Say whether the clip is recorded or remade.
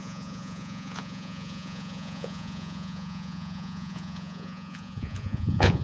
remade